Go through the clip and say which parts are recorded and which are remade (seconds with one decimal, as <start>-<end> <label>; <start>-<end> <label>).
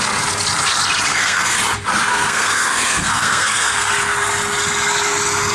0.0-1.1 recorded; 1.1-1.6 remade; 1.6-2.1 recorded; 2.1-3.9 remade; 3.9-5.5 recorded